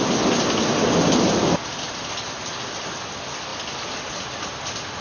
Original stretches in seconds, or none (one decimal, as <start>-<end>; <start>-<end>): 0.0-5.0